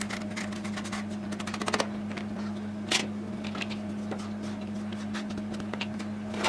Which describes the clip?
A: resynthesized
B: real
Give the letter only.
B